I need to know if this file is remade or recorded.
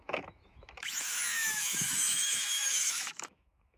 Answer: remade